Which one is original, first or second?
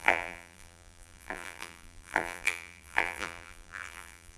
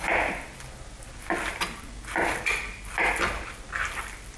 second